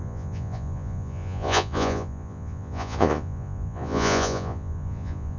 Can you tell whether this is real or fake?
fake